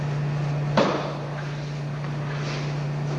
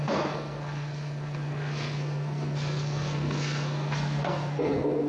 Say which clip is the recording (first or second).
first